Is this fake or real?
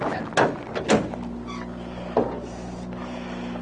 real